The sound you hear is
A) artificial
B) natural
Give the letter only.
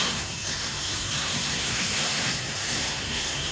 A